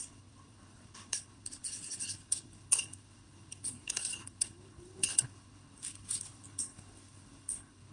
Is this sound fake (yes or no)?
yes